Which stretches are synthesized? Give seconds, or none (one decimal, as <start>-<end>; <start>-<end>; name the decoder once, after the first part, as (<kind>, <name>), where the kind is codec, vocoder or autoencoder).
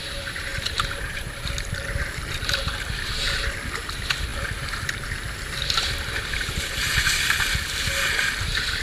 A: 0.0-8.8 (vocoder, BigVGAN v2)